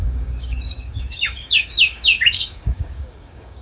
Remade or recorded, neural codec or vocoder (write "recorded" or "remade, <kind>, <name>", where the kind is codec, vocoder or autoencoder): remade, codec, DAC